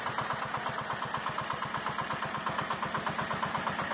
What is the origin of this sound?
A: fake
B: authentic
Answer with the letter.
B